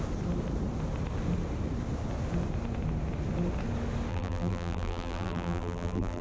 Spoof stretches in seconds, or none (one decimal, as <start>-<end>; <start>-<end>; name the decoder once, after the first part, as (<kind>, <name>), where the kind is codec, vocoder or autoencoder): 4.1-6.2 (vocoder, BigVGAN v2)